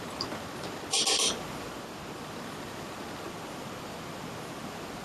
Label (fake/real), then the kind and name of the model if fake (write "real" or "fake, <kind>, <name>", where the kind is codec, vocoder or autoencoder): real